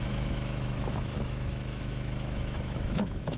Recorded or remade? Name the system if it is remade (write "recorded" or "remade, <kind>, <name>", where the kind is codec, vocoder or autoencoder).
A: remade, autoencoder, DAC-VAE